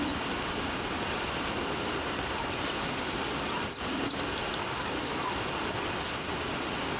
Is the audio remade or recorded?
recorded